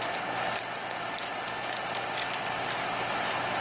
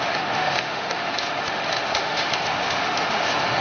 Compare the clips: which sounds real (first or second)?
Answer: first